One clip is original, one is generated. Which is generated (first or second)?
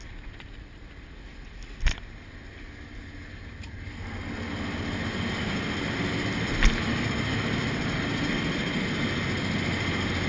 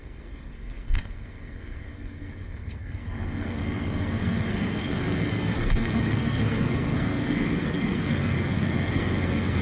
second